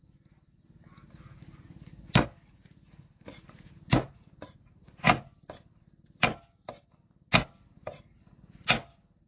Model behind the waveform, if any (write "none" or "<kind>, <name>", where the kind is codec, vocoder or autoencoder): none